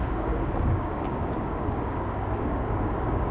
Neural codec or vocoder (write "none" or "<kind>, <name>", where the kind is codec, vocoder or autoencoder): codec, DAC